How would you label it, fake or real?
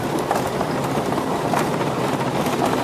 real